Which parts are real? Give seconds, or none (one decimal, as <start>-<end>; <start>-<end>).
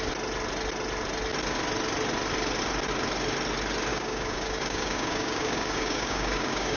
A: 0.0-3.9